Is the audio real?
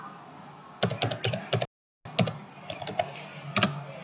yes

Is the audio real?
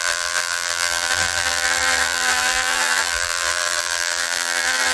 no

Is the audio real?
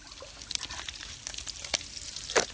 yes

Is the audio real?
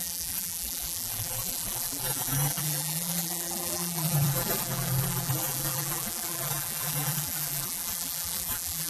no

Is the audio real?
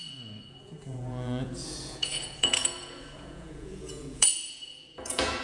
no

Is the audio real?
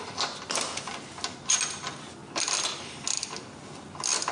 yes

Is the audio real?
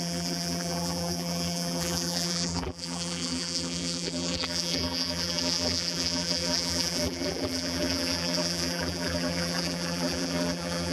no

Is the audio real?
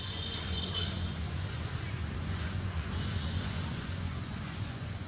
no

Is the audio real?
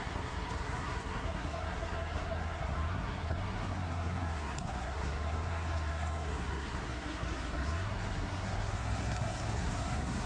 no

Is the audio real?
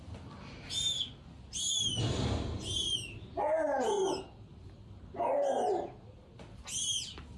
yes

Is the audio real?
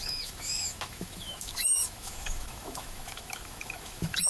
no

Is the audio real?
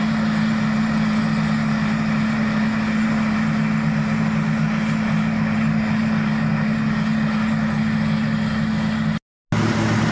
yes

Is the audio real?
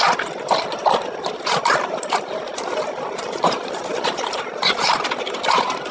no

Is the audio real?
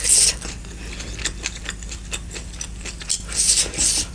yes